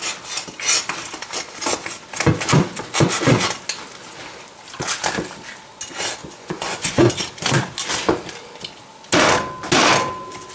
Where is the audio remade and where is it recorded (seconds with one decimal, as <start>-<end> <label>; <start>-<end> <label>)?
0.0-6.2 recorded; 6.2-7.1 remade; 7.1-10.5 recorded